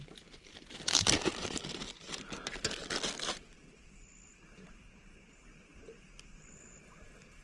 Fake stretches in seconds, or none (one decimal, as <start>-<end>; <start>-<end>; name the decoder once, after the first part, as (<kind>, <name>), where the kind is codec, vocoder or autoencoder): 0.0-1.3 (vocoder, BigVGAN v2); 5.0-5.7; 6.9-7.4